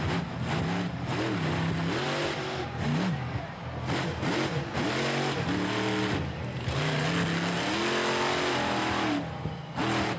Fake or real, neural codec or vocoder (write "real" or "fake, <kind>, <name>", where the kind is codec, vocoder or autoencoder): real